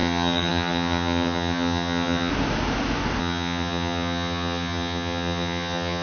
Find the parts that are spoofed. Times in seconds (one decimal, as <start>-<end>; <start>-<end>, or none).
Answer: 0.0-2.3; 3.2-6.0